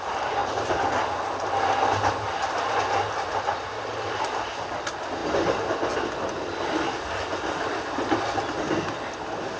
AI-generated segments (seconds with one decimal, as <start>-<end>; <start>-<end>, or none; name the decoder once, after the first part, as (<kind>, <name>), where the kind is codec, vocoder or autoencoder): none